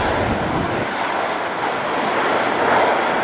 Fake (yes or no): no